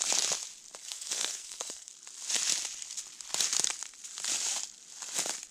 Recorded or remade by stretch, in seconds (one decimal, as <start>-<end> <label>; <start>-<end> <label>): 0.0-0.8 recorded; 0.8-1.9 remade; 1.9-5.5 recorded